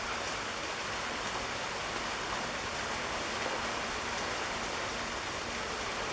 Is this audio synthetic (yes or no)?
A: no